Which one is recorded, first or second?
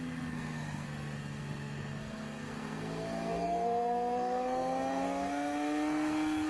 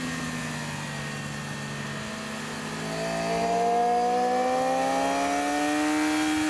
second